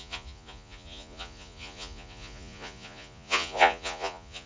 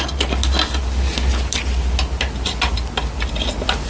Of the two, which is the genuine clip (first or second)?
second